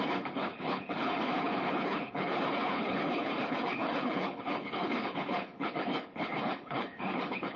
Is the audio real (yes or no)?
no